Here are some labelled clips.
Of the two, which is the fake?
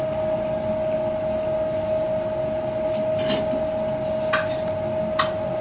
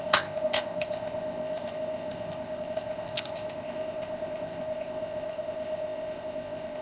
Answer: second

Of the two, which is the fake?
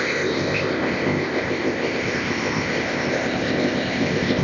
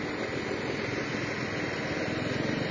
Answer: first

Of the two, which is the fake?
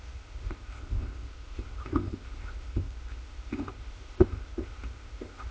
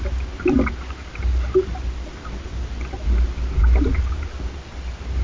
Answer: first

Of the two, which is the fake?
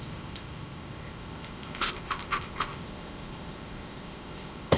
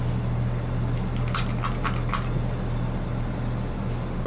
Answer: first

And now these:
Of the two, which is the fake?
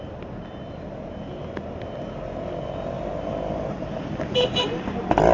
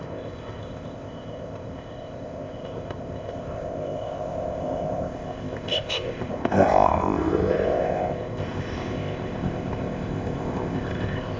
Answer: second